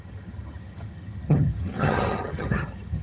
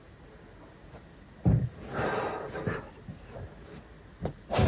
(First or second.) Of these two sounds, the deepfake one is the first